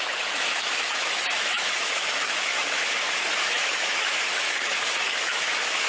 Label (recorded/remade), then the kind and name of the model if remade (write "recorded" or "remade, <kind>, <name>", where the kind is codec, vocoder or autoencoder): remade, autoencoder, DAC-VAE